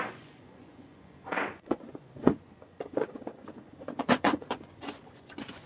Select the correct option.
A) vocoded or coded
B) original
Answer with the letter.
A